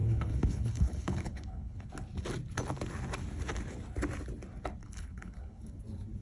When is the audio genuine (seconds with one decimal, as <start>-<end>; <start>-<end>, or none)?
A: 1.9-4.8; 5.8-6.2